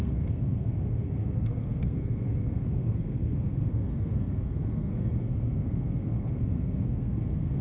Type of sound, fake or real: fake